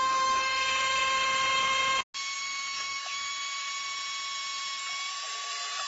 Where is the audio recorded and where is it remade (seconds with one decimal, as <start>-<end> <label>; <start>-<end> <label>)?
0.0-1.1 remade; 1.1-2.4 recorded; 2.4-3.7 remade; 3.7-5.5 recorded; 5.5-5.9 remade